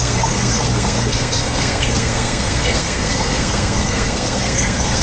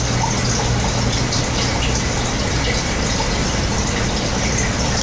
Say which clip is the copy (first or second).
first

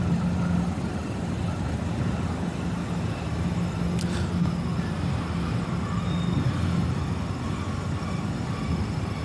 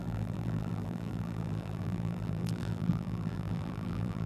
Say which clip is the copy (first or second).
second